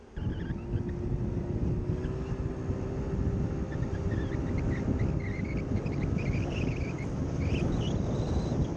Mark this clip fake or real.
real